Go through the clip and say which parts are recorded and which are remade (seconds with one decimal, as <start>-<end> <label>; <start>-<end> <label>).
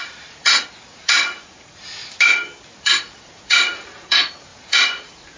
0.0-2.0 remade; 2.0-2.6 recorded; 2.6-5.4 remade